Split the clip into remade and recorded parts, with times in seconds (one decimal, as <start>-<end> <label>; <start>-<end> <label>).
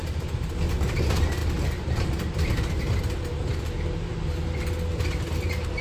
0.0-0.6 remade; 0.6-5.8 recorded